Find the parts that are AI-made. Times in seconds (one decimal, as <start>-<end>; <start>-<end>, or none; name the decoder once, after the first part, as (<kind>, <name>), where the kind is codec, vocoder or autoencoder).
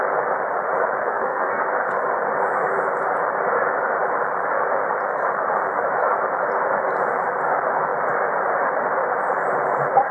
1.0-1.6 (codec, SNAC)